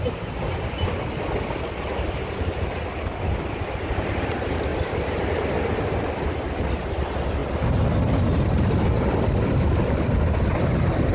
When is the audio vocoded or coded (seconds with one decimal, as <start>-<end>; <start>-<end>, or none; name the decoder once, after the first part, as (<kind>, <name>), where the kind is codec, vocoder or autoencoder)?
none